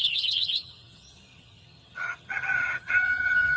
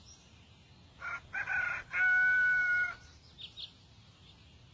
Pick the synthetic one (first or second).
first